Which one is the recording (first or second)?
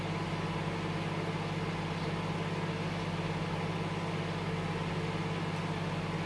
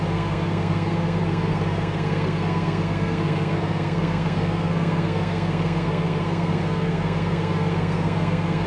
first